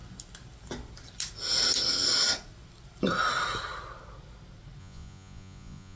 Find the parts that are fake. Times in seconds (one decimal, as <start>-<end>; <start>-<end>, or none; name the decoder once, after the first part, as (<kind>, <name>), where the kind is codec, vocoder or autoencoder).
4.8-6.0 (vocoder, Vocos)